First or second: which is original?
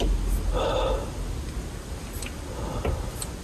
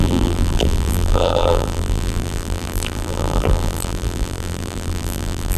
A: first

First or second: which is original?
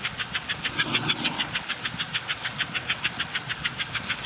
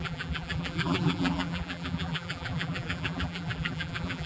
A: first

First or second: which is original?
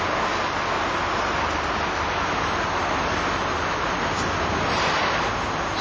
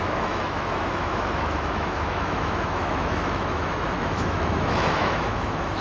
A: first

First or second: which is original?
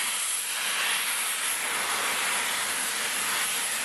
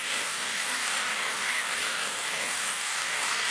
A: first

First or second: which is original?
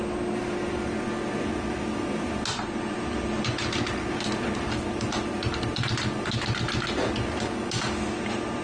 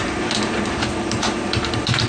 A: first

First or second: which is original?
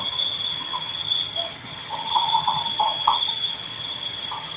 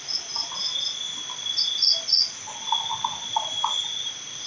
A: second